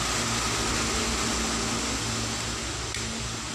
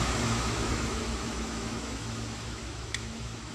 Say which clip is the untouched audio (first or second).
first